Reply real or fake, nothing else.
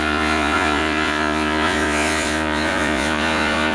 fake